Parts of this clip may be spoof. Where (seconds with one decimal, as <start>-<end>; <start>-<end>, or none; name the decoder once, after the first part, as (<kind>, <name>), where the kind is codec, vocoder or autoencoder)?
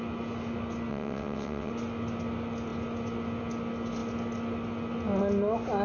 0.9-1.7 (vocoder, WaveNeXt)